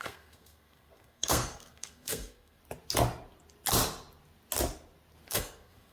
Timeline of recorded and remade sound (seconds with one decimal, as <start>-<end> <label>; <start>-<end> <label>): 0.0-2.6 remade; 2.6-5.3 recorded; 5.3-5.9 remade